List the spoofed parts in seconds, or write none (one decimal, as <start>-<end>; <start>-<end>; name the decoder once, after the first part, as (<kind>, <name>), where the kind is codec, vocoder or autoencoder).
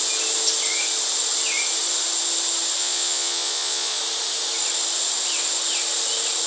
2.8-4.0 (vocoder, Vocos)